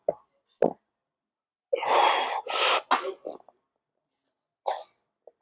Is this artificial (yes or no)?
no